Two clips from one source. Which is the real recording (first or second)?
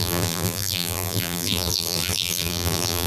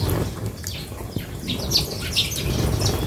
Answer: second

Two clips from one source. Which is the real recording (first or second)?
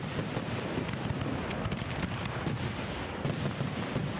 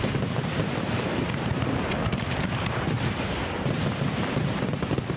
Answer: first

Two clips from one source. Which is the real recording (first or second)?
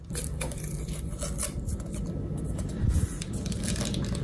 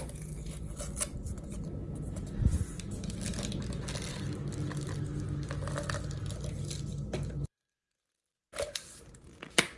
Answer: second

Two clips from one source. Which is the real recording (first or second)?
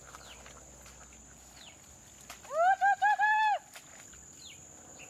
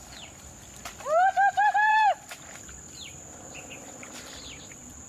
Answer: first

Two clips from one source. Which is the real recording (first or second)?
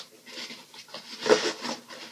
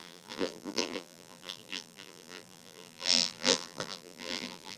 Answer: first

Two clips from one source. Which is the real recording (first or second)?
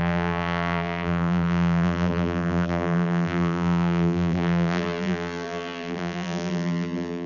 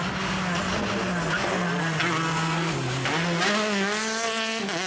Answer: second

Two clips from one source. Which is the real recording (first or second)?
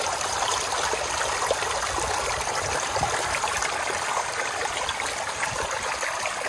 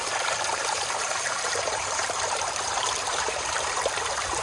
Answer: first